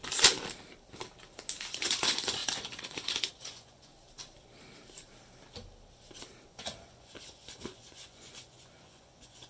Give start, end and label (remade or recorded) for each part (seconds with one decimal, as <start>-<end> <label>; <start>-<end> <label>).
0.0-1.7 recorded; 1.7-3.9 remade; 3.9-6.5 recorded; 6.5-9.5 remade